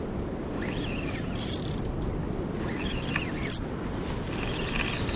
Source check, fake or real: real